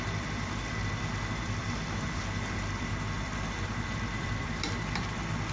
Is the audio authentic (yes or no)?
no